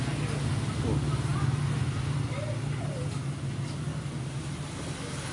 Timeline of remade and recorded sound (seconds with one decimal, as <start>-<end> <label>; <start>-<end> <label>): 0.0-5.3 recorded